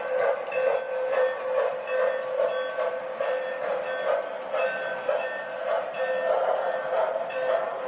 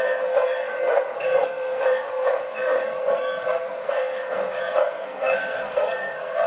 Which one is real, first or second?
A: first